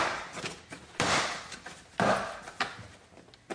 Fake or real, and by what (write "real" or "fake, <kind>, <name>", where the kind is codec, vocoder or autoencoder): real